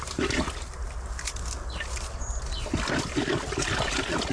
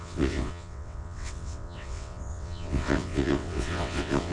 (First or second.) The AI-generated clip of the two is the second